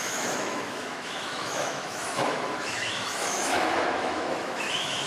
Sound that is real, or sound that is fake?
fake